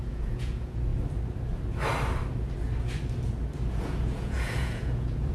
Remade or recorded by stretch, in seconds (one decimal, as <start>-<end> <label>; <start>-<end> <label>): 0.0-0.9 remade; 0.9-3.8 recorded; 3.8-5.3 remade